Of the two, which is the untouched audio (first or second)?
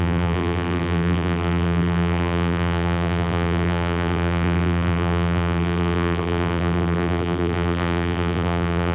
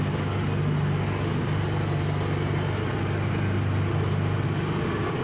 second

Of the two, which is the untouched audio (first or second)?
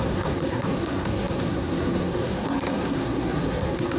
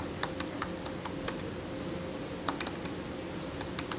second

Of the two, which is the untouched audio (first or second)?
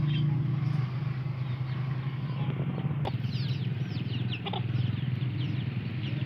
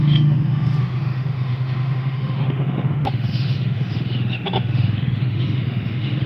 first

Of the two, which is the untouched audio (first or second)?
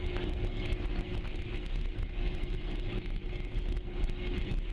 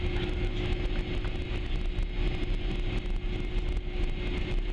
second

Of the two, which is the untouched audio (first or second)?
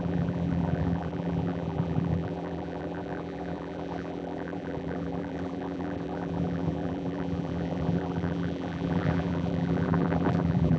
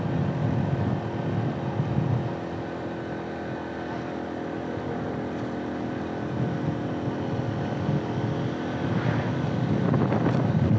second